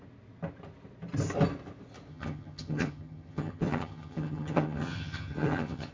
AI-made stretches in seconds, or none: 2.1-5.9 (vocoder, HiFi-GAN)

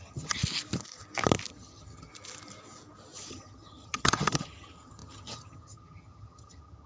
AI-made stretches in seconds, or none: 0.0-0.4 (vocoder, HiFi-GAN); 1.5-2.1; 3.3-6.9

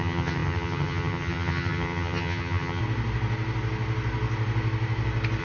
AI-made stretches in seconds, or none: 0.0-2.8 (vocoder, HiFi-GAN)

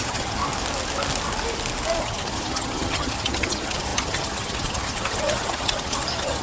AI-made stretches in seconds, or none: 0.0-0.4 (vocoder, HiFi-GAN); 2.0-6.4